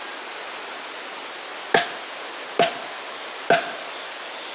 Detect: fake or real real